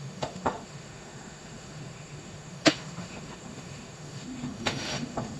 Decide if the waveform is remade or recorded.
remade